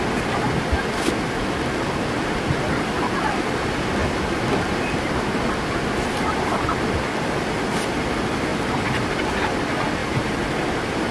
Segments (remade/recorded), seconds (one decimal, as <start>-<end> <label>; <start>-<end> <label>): 0.0-10.0 recorded; 10.0-11.1 remade